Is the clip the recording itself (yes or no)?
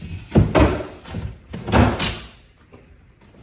yes